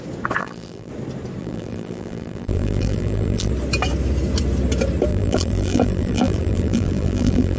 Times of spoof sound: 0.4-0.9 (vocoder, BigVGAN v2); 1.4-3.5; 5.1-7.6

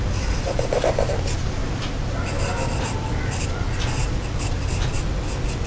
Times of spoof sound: none

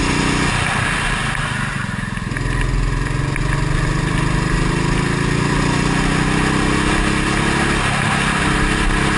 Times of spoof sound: none

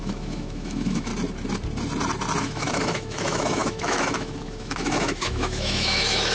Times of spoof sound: 0.0-1.1 (autoencoder, DAC-VAE); 2.4-6.3